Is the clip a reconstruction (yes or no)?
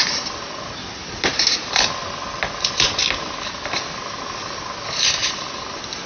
no